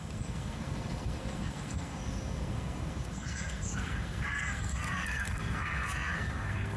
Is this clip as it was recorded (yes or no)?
no